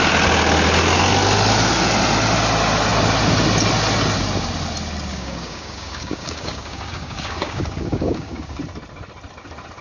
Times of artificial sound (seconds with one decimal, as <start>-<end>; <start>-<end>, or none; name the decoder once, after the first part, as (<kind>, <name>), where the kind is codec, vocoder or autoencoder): 5.1-8.6 (codec, DAC)